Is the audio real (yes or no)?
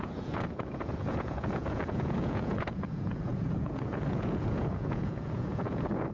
no